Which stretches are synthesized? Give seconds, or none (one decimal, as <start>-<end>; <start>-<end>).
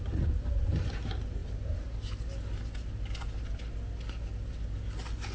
none